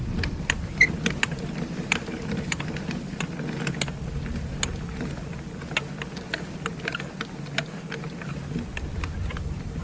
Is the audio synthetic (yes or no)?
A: no